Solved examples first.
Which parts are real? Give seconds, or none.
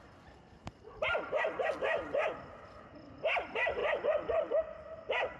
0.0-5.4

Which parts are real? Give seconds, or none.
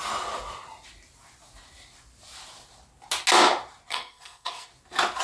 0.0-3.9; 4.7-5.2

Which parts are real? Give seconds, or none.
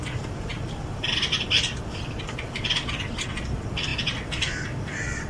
none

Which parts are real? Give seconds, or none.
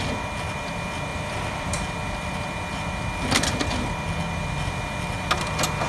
0.0-1.1; 1.7-5.9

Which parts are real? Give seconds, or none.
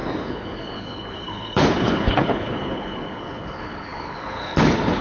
none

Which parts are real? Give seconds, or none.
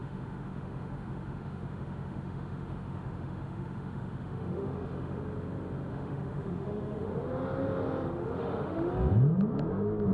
5.2-5.9; 7.1-8.2; 8.9-10.1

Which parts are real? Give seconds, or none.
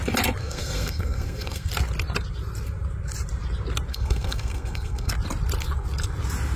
0.0-0.4; 1.7-3.9; 5.1-6.6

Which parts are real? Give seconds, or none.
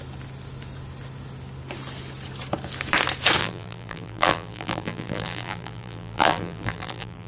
0.0-3.4